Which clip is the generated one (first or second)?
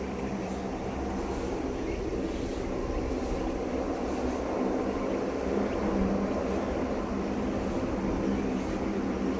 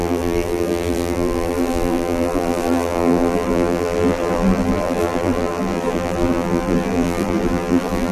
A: second